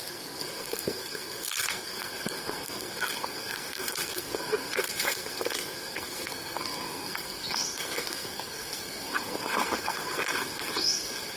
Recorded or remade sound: remade